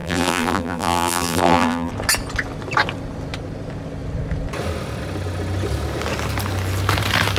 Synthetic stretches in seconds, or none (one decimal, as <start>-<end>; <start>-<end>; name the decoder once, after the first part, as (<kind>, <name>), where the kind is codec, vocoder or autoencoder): 0.0-1.9 (vocoder, BigVGAN v2)